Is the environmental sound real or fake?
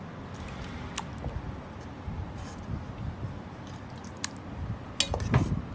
real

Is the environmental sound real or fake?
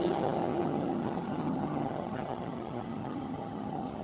fake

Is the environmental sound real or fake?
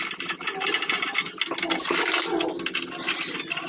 real